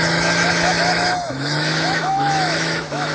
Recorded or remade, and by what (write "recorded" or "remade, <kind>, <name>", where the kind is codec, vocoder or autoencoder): remade, autoencoder, DAC-VAE